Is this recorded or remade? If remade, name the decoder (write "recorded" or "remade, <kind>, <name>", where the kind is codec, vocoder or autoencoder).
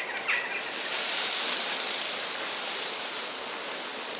recorded